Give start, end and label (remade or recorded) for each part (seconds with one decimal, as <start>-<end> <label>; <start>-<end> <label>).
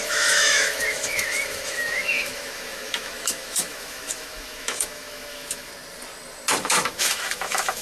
0.0-5.7 remade; 5.7-6.6 recorded; 6.6-7.8 remade